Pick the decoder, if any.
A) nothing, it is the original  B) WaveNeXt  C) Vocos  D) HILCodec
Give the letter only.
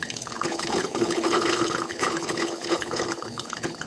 D